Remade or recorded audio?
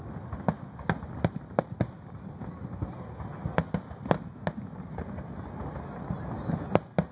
recorded